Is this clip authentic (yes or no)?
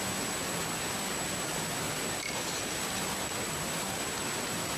no